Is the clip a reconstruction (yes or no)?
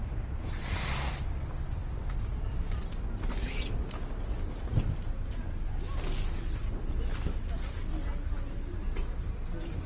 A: no